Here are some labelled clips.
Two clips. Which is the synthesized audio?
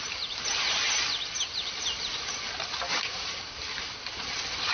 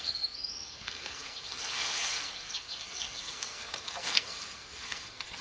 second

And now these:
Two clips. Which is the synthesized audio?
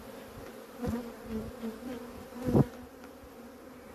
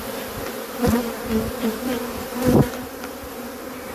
second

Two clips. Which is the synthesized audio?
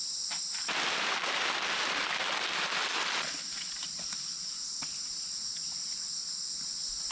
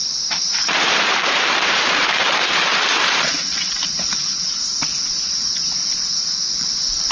second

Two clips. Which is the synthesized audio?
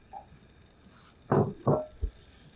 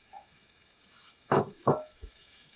second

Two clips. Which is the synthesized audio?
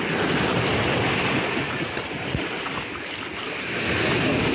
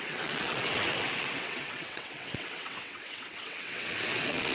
second